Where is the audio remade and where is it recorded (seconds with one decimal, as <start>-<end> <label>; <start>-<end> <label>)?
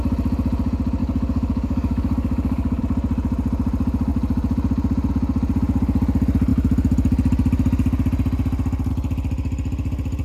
0.0-1.0 recorded; 1.0-2.8 remade; 2.8-10.2 recorded